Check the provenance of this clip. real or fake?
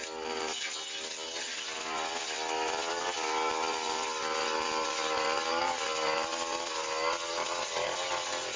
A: real